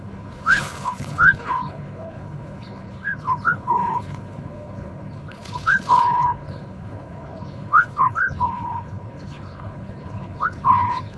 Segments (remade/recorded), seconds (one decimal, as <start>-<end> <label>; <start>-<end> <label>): 0.0-11.2 remade